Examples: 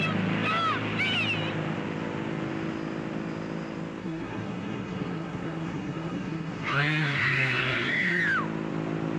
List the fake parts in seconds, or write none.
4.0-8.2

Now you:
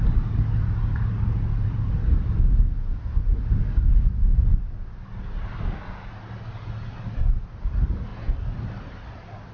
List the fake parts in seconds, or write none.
none